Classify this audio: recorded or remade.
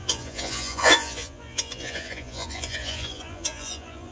remade